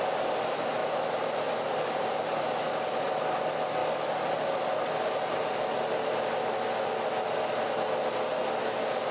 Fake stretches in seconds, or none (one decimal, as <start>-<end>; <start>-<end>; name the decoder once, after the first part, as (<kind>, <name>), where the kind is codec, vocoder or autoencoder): none